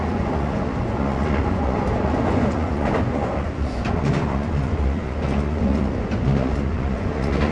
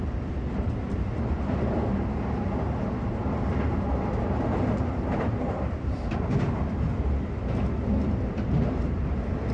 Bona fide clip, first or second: second